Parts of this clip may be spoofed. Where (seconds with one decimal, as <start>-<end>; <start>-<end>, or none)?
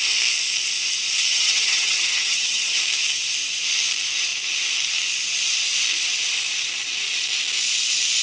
1.3-2.8